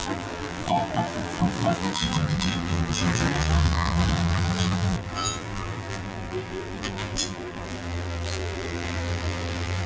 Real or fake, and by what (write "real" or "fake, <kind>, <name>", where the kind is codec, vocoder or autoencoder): fake, vocoder, BigVGAN v2